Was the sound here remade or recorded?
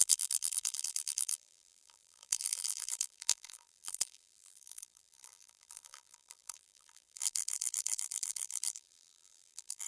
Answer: remade